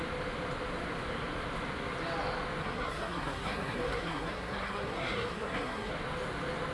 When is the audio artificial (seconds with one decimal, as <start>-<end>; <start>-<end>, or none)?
2.6-5.9